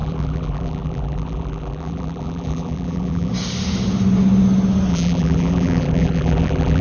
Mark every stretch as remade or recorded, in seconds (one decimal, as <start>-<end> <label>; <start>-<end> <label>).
0.0-3.3 remade; 3.3-4.9 recorded; 4.9-6.8 remade